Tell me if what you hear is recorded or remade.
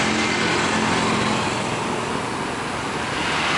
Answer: recorded